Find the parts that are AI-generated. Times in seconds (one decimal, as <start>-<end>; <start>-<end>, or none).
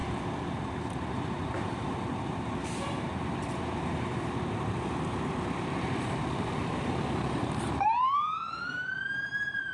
1.1-9.7